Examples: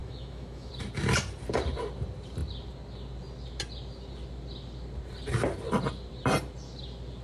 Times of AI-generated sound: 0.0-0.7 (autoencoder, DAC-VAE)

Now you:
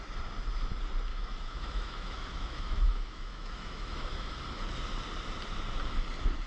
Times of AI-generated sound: 1.1-4.4 (autoencoder, DAC-VAE)

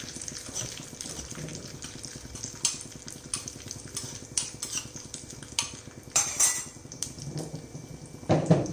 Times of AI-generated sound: none